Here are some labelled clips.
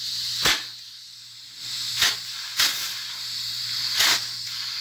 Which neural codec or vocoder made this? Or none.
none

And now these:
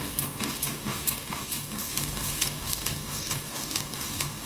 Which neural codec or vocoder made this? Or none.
codec, DAC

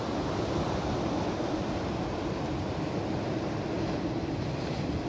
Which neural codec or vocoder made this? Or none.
none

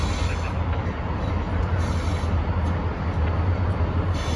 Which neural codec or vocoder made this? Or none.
none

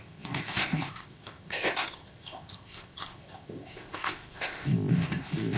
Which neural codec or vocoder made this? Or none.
codec, ZipCodec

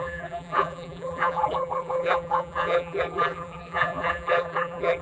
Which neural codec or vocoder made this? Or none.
vocoder, BigVGAN v2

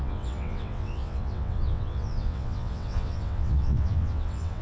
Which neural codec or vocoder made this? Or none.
vocoder, WaveNeXt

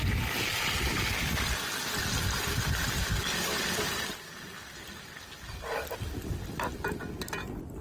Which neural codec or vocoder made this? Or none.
none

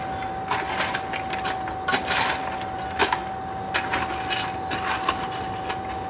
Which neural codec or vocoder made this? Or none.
none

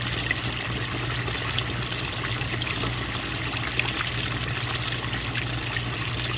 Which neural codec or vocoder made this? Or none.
none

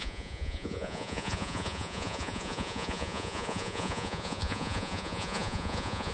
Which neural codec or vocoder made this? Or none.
vocoder, Vocos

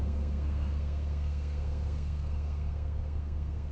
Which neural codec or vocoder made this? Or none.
codec, SNAC